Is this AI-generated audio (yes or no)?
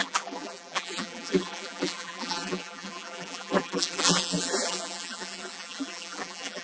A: yes